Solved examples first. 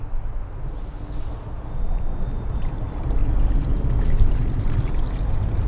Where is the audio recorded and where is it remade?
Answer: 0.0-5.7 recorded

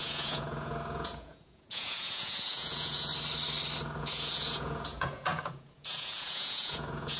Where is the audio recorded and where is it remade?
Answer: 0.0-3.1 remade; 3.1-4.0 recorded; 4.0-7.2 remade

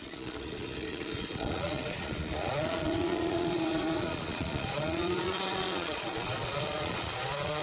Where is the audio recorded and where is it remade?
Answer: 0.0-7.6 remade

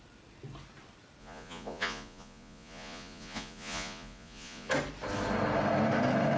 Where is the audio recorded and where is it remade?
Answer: 0.0-1.2 recorded; 1.2-4.7 remade; 4.7-6.4 recorded

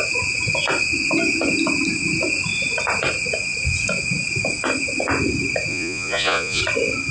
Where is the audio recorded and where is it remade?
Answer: 0.0-5.7 recorded; 5.7-6.6 remade; 6.6-7.1 recorded

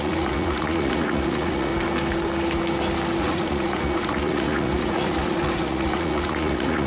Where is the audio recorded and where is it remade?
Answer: 0.0-1.7 remade; 1.7-3.2 recorded; 3.2-6.9 remade

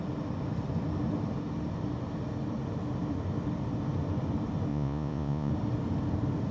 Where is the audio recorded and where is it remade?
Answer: 0.0-4.7 recorded; 4.7-5.5 remade; 5.5-6.5 recorded